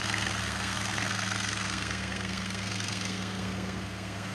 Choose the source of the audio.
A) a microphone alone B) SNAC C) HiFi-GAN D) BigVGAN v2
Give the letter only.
B